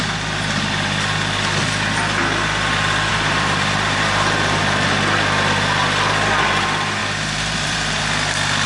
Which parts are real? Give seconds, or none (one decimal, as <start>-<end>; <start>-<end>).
0.0-3.1; 4.6-7.0; 8.0-8.7